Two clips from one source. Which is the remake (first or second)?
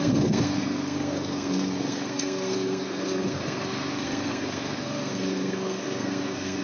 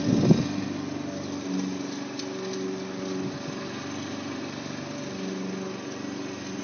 first